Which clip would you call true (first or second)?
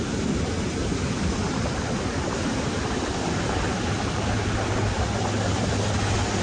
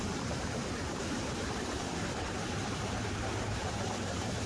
first